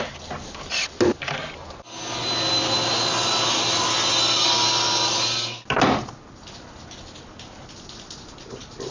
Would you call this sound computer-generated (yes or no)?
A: no